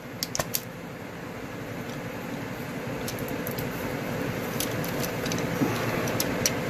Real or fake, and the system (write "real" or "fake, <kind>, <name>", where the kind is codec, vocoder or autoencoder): real